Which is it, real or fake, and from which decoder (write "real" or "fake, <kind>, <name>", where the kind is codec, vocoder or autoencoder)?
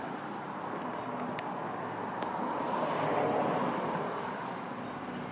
real